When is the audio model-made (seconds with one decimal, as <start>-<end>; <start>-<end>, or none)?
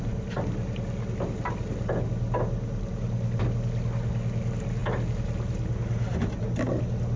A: none